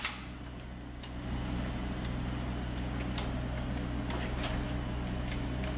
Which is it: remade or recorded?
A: recorded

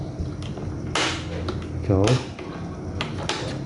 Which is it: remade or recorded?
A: recorded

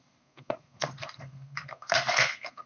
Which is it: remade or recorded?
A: remade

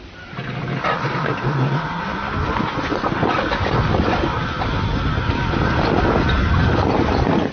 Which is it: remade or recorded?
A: recorded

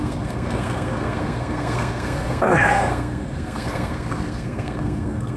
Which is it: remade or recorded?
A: remade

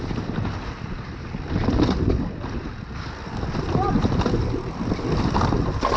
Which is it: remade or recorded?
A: recorded